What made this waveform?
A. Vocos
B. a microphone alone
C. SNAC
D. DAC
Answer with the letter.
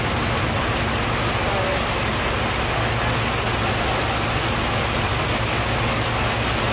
B